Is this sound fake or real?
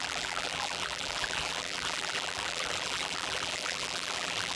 fake